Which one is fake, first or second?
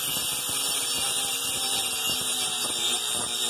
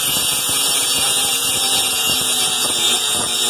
second